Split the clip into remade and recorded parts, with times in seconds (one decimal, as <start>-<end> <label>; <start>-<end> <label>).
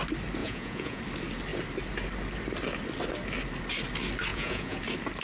0.0-0.4 recorded; 0.4-1.0 remade; 1.0-4.3 recorded; 4.3-4.8 remade; 4.8-5.2 recorded